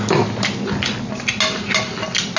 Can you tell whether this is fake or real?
real